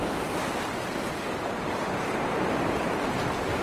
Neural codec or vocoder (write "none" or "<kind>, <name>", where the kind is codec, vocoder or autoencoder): none